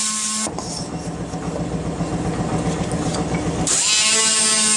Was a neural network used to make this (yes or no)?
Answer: no